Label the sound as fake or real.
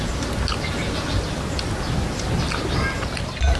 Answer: real